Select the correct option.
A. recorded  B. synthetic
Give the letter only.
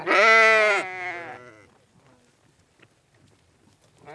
A